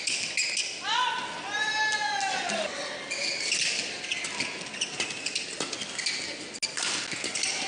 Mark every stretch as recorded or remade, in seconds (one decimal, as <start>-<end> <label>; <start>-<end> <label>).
0.0-7.7 recorded